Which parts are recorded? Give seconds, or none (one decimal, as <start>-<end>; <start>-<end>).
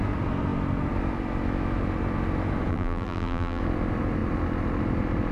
0.0-2.7; 3.6-5.3